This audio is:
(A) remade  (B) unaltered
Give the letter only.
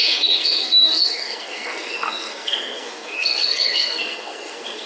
A